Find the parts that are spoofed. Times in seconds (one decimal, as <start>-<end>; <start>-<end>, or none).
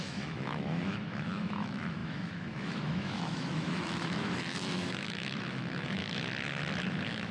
0.0-6.0; 6.8-7.3